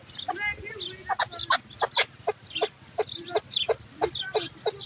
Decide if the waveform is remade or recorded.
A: recorded